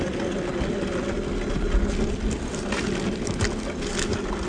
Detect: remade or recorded recorded